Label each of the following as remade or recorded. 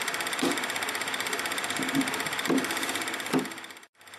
recorded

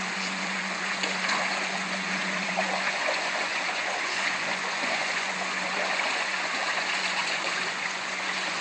remade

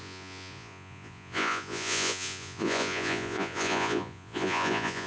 remade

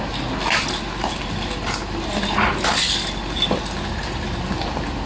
recorded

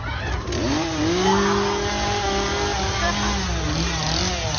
recorded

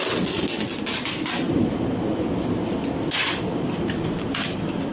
recorded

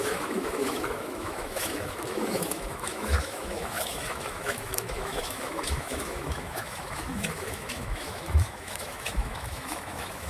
remade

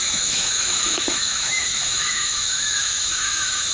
remade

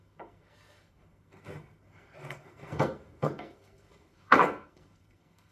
remade